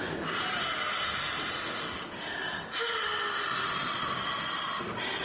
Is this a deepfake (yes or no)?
no